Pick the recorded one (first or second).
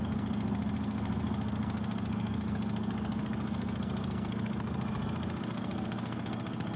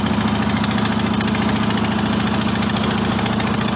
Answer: second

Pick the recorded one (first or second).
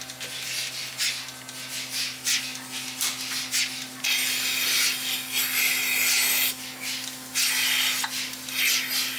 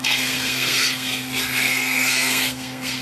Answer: first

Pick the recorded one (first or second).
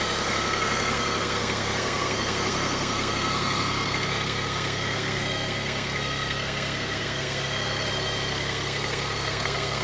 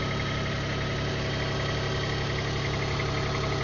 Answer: second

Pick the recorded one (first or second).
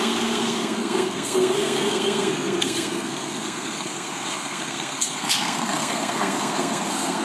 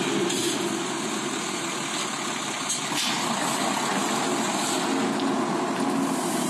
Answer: second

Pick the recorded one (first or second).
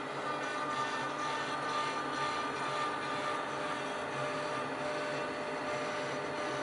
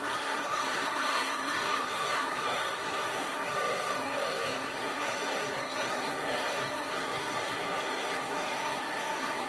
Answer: first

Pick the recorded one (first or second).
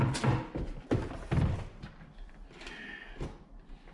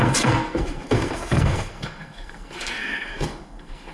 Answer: first